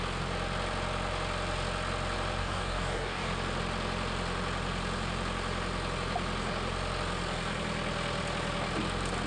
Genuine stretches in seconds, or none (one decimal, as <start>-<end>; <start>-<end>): 0.0-2.4; 3.3-9.3